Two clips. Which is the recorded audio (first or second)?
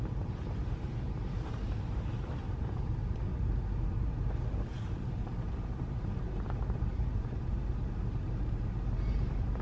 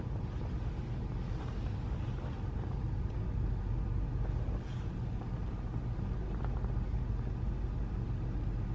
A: second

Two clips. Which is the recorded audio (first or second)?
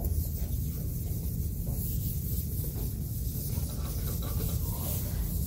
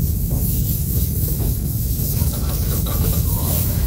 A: first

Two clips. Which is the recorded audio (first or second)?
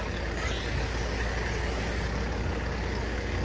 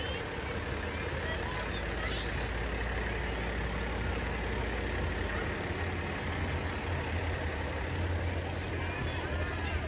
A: second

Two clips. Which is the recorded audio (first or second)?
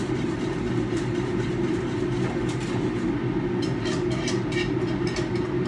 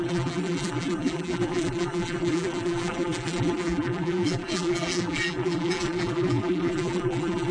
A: first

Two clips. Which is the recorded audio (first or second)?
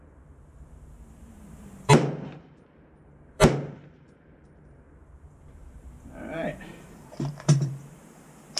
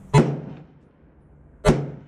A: second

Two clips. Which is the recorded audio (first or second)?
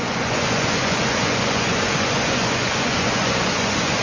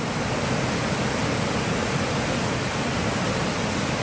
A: second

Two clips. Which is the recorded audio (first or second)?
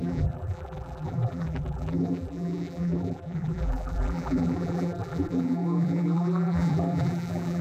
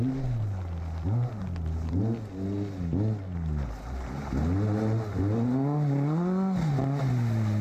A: second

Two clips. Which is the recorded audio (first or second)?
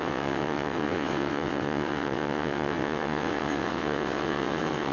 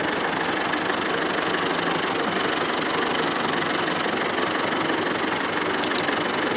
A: second